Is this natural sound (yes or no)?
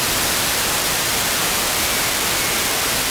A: yes